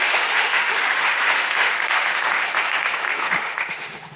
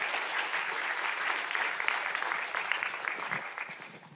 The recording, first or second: second